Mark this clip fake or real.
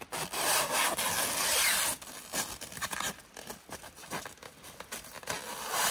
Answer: real